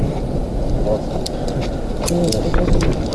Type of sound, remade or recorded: recorded